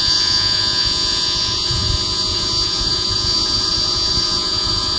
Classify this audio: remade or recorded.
remade